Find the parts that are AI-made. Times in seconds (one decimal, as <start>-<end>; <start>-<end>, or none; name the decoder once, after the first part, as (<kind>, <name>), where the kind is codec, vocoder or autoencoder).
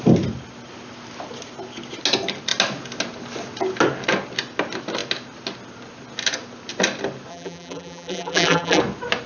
7.3-8.8 (vocoder, BigVGAN v2)